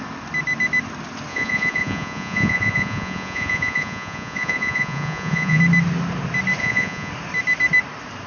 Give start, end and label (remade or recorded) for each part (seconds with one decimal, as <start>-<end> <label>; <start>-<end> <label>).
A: 0.0-1.3 recorded; 1.3-5.6 remade; 5.6-6.6 recorded; 6.6-7.1 remade; 7.1-8.3 recorded